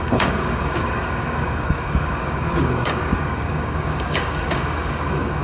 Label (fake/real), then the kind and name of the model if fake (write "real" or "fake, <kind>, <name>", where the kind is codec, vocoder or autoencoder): fake, codec, DAC